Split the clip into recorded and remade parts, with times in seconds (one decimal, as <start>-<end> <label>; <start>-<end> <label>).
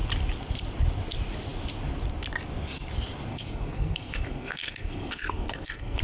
0.0-3.3 recorded; 3.3-6.0 remade